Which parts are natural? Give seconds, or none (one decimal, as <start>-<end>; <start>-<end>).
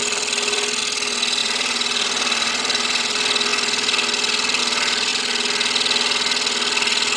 0.8-1.4; 2.5-7.2